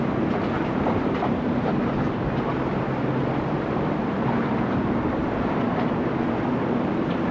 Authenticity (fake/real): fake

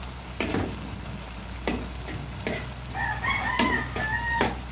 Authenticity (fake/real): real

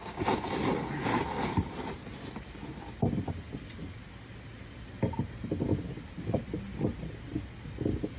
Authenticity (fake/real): real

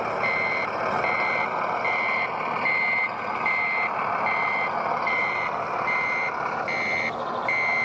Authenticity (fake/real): real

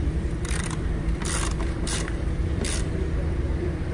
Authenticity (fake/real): fake